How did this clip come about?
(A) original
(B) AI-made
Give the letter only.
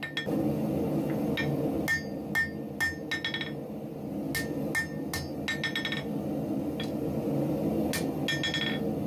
A